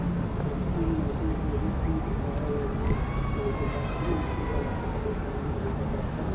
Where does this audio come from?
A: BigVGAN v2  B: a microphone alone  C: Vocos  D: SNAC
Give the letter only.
B